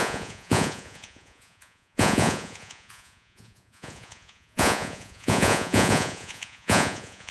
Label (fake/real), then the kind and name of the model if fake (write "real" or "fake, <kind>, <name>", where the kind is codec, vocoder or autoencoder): fake, vocoder, Vocos